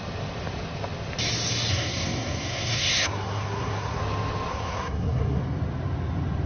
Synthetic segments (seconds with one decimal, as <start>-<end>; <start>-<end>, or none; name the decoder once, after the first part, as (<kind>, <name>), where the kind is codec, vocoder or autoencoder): 1.7-4.0 (codec, SNAC); 4.5-5.4